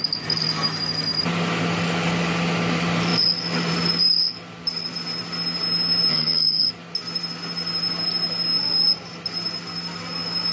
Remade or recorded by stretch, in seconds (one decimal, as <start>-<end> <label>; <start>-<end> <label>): 0.0-6.1 recorded; 6.1-6.7 remade; 6.7-10.5 recorded